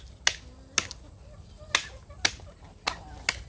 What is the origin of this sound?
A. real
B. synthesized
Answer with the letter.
A